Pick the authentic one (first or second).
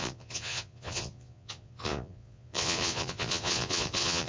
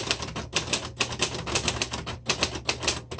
second